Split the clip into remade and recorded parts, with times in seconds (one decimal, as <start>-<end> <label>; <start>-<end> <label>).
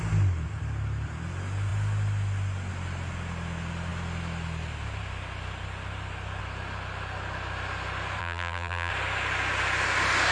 0.0-8.2 recorded; 8.2-8.9 remade; 8.9-10.3 recorded